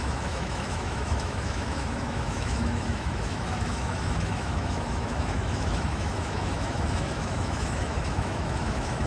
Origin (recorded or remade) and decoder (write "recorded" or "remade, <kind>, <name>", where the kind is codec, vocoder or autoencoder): remade, autoencoder, DAC-VAE